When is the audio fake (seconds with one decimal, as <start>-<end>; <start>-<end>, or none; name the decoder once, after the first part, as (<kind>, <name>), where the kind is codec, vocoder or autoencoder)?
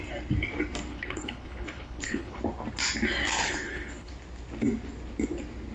0.9-2.4 (codec, HILCodec); 3.4-4.1